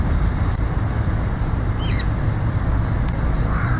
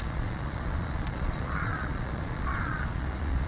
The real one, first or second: first